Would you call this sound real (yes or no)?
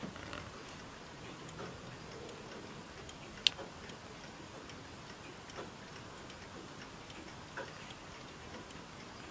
yes